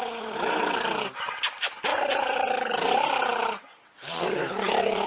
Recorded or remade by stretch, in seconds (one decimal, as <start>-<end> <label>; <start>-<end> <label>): 0.0-5.1 remade